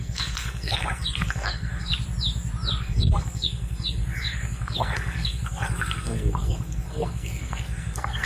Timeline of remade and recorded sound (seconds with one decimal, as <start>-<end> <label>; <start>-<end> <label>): 0.0-1.9 remade; 1.9-2.8 recorded; 2.8-8.3 remade